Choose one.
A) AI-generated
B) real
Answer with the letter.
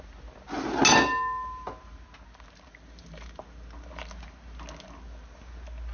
B